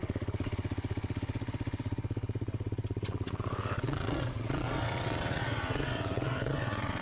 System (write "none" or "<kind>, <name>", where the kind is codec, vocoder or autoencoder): vocoder, WaveNeXt